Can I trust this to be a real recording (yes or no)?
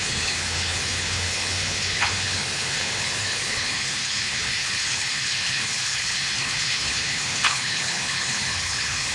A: no